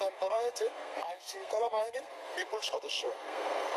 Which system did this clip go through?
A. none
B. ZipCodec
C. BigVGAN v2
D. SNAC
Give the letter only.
D